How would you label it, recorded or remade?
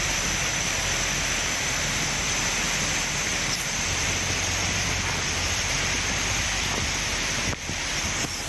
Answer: remade